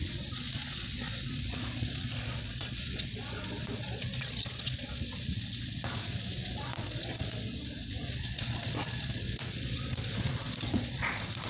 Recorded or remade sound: remade